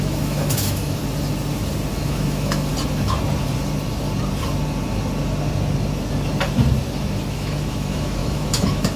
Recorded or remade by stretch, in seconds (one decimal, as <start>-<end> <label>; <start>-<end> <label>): 0.0-1.0 remade; 1.0-1.9 recorded; 1.9-2.7 remade; 2.7-7.3 recorded; 7.3-9.0 remade